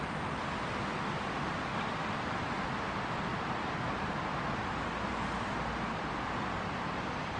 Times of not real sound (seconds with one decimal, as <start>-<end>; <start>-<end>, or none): none